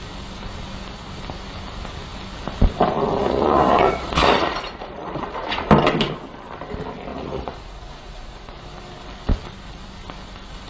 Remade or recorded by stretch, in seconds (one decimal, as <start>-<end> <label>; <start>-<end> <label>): 0.0-3.2 recorded; 3.2-5.7 remade; 5.7-7.1 recorded; 7.1-8.6 remade; 8.6-10.7 recorded